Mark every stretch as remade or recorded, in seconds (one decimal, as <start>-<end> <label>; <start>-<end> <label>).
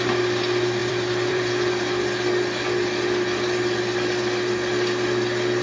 0.0-0.8 recorded; 0.8-1.5 remade; 1.5-5.6 recorded